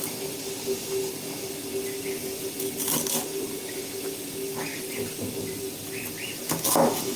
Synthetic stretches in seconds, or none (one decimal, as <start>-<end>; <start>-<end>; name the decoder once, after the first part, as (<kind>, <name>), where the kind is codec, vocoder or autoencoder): 3.3-3.8 (vocoder, BigVGAN v2); 4.7-5.6

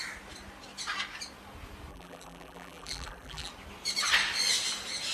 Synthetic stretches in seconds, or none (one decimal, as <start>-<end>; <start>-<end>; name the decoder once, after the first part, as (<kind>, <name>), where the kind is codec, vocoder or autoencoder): 1.9-3.5 (vocoder, BigVGAN v2)

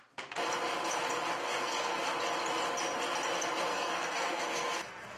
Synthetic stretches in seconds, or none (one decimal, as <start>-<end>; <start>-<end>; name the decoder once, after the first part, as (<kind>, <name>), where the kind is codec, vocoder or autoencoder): 1.4-2.0 (codec, SNAC); 3.7-5.2

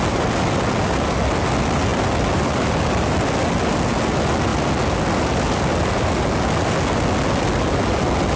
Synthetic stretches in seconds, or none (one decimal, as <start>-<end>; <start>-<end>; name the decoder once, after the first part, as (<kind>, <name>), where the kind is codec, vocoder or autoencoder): none

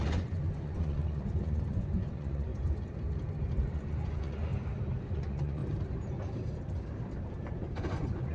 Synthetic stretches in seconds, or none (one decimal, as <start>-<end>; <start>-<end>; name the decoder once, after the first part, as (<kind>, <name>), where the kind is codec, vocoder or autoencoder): 0.0-2.5 (vocoder, Vocos); 3.6-4.5; 5.0-5.6; 7.5-8.3

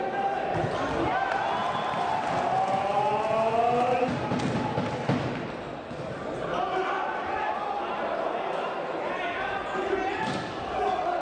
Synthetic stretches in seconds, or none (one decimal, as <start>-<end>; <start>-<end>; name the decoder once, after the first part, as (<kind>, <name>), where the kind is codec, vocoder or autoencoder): none

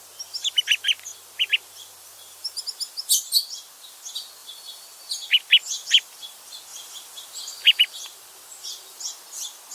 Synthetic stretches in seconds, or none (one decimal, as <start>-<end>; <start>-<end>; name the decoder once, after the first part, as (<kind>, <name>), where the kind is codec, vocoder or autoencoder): 2.0-2.6 (vocoder, BigVGAN v2); 4.4-5.2